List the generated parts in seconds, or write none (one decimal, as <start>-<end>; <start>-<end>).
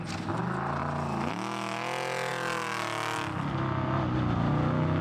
none